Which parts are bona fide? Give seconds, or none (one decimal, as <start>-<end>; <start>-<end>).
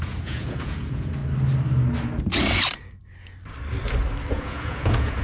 1.2-4.3